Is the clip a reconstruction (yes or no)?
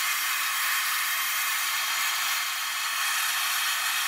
no